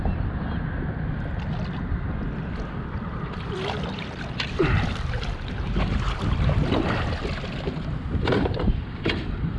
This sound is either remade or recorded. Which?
remade